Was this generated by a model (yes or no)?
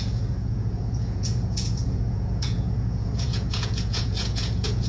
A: yes